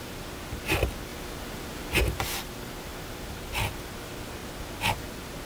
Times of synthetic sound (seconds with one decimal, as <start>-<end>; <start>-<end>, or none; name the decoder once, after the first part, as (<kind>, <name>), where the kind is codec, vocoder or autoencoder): none